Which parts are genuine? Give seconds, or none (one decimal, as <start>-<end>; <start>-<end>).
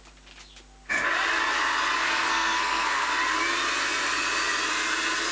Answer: 0.0-2.0; 3.1-5.3